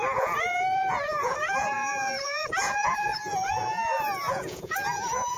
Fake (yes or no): yes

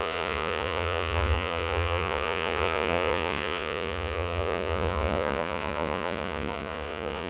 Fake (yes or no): yes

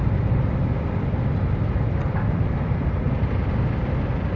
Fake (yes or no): no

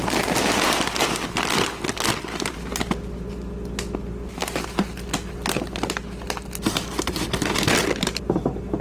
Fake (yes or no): no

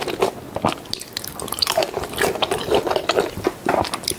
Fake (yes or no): no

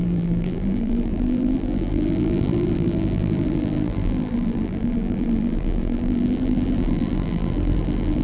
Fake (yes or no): yes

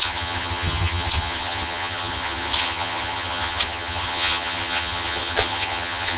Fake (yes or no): yes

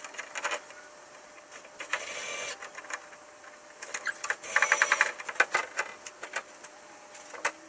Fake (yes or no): no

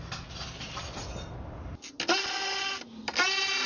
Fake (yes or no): no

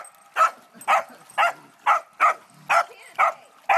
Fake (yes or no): no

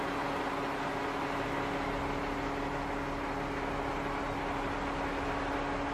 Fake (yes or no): no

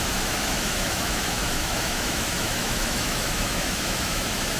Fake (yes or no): yes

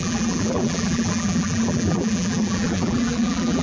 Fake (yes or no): yes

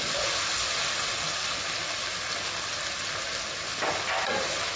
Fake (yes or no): no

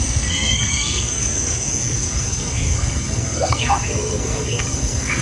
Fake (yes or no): yes